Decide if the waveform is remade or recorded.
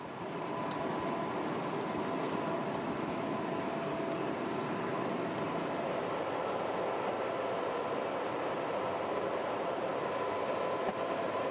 recorded